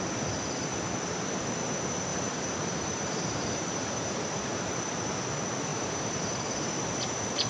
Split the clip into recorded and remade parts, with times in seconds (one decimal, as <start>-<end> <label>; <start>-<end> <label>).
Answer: 0.0-2.1 recorded; 2.1-4.6 remade; 4.6-5.7 recorded; 5.7-6.3 remade; 6.3-7.5 recorded